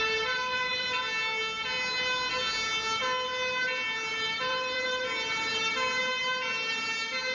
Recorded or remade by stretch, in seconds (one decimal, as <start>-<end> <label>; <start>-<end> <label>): 0.0-0.5 recorded; 0.5-1.0 remade; 1.0-4.1 recorded; 4.1-5.0 remade; 5.0-7.3 recorded